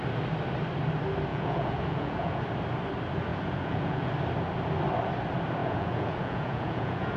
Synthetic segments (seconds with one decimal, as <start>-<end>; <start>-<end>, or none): 1.3-2.4; 3.3-4.1; 5.6-7.2